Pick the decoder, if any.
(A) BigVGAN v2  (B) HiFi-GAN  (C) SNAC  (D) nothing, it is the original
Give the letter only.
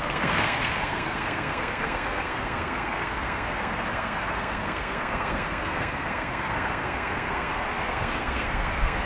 C